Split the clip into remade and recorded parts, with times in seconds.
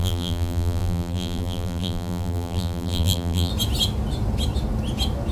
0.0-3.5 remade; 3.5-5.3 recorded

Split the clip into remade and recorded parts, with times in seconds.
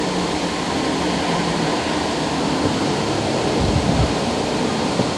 0.0-1.7 recorded; 1.7-4.8 remade; 4.8-5.2 recorded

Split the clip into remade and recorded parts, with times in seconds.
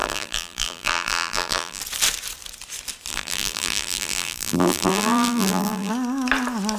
0.0-1.8 remade; 1.8-3.1 recorded; 3.1-5.9 remade; 5.9-6.8 recorded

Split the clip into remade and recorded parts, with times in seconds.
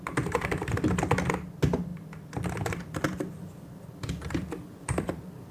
0.0-1.9 recorded; 1.9-5.5 remade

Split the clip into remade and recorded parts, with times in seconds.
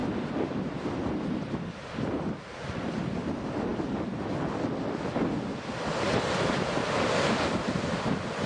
0.0-3.3 remade; 3.3-8.5 recorded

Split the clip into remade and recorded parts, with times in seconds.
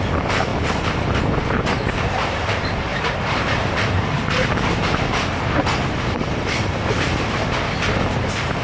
0.0-8.6 remade